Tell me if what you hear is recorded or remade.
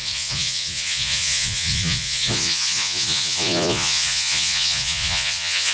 remade